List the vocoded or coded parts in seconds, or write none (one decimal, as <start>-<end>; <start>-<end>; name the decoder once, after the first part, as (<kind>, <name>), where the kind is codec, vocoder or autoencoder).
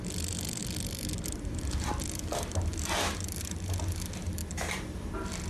none